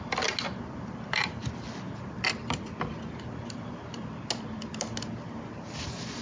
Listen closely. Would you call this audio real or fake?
real